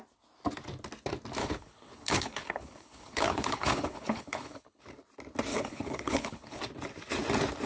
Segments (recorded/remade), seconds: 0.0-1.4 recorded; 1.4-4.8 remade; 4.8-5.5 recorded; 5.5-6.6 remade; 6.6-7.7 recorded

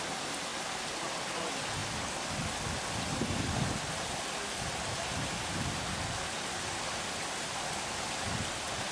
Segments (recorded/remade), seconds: 0.0-8.9 recorded

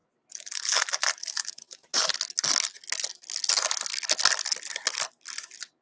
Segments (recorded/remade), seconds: 0.0-5.8 recorded

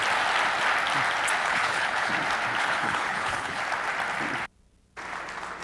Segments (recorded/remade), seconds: 0.0-1.4 recorded; 1.4-2.1 remade; 2.1-2.6 recorded; 2.6-3.6 remade; 3.6-5.6 recorded

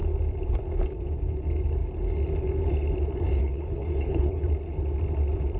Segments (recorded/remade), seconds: 0.0-3.4 recorded; 3.4-4.4 remade; 4.4-5.6 recorded

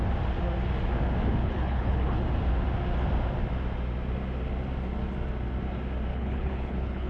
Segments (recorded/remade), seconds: 0.0-1.4 recorded; 1.4-2.2 remade; 2.2-6.1 recorded; 6.1-7.1 remade

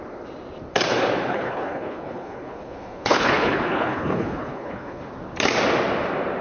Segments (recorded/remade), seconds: 0.0-1.3 recorded; 1.3-5.1 remade; 5.1-6.4 recorded

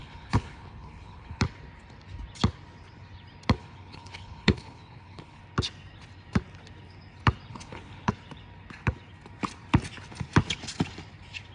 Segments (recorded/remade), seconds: 0.0-1.4 remade; 1.4-3.6 recorded; 3.6-5.4 remade; 5.4-7.5 recorded; 7.5-8.1 remade; 8.1-11.5 recorded